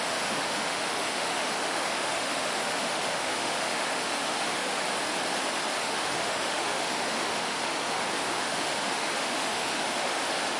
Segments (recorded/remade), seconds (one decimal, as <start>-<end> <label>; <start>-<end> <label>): 0.0-4.8 remade; 4.8-5.8 recorded; 5.8-10.6 remade